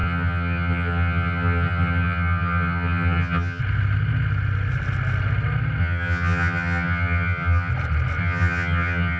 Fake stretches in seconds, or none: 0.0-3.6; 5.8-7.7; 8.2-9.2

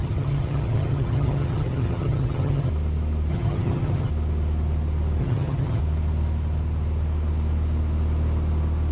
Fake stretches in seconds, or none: 0.0-2.7; 3.3-4.1; 5.2-5.8

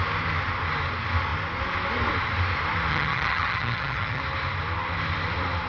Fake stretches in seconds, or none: 2.9-4.2

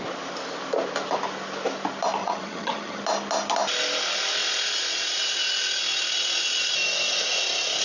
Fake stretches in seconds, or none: 2.2-3.0